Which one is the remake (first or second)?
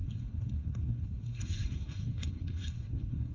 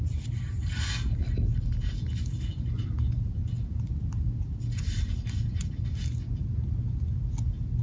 first